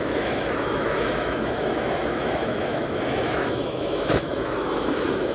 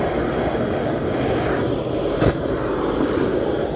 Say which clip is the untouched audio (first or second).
second